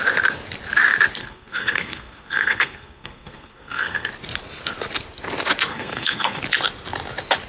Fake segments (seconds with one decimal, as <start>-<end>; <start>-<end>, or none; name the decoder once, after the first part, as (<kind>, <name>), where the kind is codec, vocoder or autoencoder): 1.2-4.1 (codec, SNAC); 5.7-6.4